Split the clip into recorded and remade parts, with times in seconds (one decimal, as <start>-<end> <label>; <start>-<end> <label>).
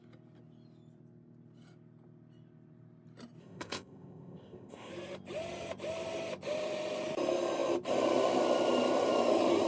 0.0-3.4 recorded; 3.4-4.9 remade; 4.9-9.7 recorded